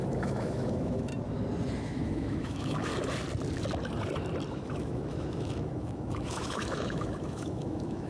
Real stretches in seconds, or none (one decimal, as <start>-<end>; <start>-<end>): 1.1-1.8; 2.9-4.5